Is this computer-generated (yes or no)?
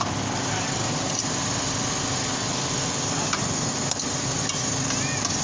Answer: no